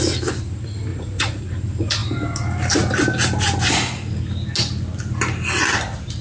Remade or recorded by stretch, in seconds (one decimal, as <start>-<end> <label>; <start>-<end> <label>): 0.0-0.9 recorded; 0.9-1.4 remade; 1.4-6.2 recorded